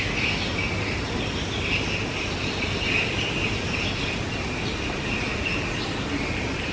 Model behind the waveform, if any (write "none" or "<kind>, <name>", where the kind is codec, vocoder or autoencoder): none